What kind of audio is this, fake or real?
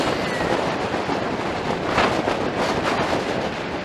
real